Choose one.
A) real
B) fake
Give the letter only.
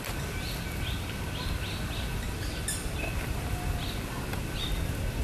A